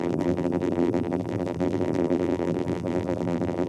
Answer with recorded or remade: remade